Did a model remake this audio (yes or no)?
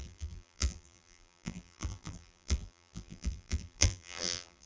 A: yes